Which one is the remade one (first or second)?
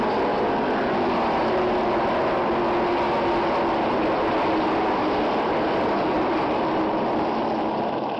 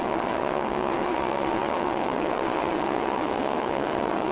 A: second